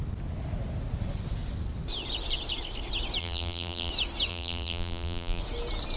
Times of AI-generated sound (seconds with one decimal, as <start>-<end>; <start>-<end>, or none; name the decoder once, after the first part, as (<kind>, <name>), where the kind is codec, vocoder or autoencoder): 3.2-3.9 (vocoder, BigVGAN v2); 4.3-5.4